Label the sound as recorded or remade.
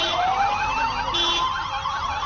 remade